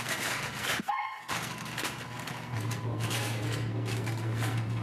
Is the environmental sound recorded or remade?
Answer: remade